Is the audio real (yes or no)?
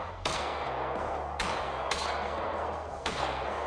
no